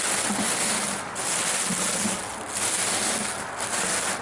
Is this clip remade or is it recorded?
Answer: recorded